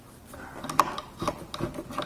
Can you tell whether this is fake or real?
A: real